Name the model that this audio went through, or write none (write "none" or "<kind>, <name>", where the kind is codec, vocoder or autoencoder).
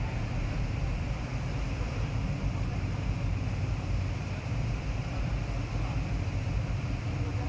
vocoder, BigVGAN v2